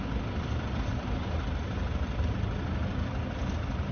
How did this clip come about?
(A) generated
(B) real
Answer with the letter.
B